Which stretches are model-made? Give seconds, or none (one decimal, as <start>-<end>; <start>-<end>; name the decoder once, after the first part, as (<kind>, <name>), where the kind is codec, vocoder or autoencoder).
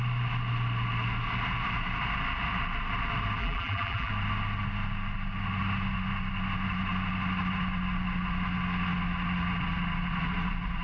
3.4-4.1 (vocoder, BigVGAN v2)